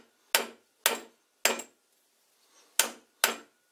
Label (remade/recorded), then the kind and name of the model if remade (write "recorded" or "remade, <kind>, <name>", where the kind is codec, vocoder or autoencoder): recorded